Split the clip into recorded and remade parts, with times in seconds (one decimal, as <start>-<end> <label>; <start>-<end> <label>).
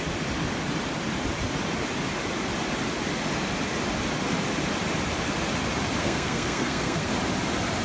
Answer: 0.0-6.0 recorded; 6.0-7.1 remade; 7.1-7.8 recorded